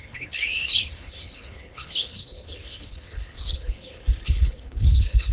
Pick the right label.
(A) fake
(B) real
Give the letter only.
A